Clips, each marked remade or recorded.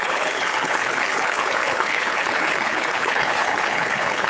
remade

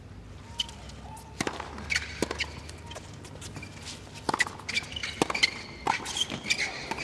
recorded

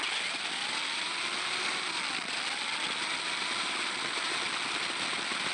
recorded